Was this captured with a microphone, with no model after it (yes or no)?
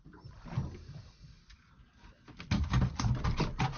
yes